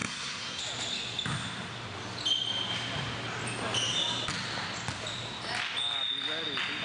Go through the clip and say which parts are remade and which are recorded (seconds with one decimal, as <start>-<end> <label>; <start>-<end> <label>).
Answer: 0.0-0.6 remade; 0.6-6.8 recorded